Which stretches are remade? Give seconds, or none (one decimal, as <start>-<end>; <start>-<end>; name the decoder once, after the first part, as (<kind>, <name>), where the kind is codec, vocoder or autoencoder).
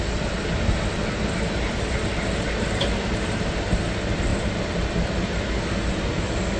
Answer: none